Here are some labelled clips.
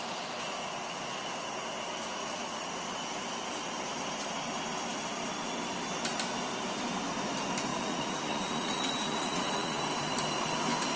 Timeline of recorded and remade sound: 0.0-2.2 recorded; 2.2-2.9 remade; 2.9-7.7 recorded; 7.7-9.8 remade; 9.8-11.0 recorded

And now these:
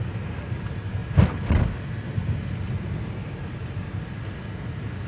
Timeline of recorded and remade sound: 0.0-5.1 recorded

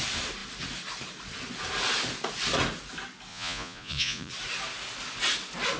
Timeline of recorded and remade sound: 0.0-3.3 recorded; 3.3-4.3 remade; 4.3-5.8 recorded

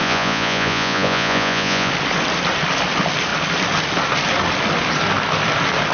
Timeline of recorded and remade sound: 0.0-1.9 remade; 1.9-5.9 recorded

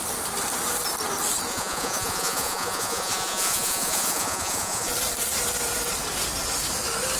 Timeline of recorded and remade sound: 0.0-1.5 recorded; 1.5-4.9 remade; 4.9-7.2 recorded